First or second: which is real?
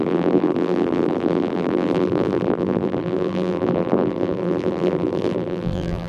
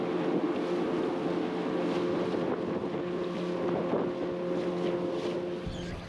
second